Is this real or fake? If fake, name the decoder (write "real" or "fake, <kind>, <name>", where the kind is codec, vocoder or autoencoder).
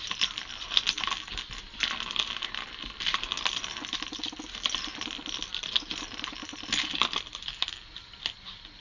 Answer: real